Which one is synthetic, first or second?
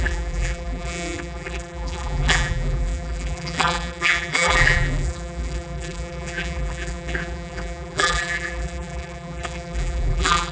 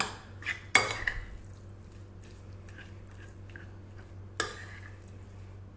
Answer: first